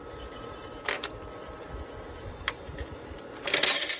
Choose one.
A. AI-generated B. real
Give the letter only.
B